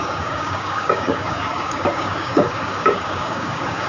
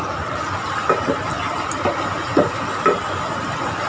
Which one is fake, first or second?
first